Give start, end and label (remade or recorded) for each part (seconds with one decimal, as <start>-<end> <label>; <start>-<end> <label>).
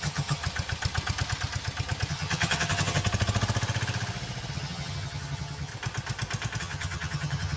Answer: 0.0-0.4 remade; 0.4-2.1 recorded; 2.1-3.0 remade; 3.0-4.5 recorded; 4.5-5.7 remade; 5.7-6.6 recorded; 6.6-7.6 remade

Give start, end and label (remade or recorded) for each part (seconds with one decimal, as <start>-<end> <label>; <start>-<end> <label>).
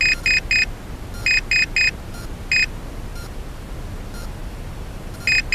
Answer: 0.0-3.1 recorded; 3.1-3.7 remade; 3.7-4.4 recorded; 4.4-5.1 remade; 5.1-5.5 recorded